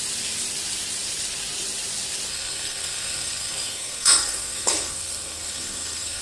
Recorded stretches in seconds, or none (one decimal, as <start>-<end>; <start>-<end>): 0.0-2.3